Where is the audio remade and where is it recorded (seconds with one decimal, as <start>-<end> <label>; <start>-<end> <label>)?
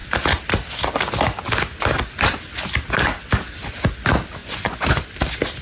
0.0-4.4 recorded; 4.4-5.1 remade; 5.1-5.6 recorded